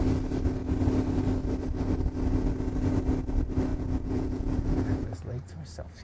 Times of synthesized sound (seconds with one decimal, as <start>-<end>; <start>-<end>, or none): 3.7-5.6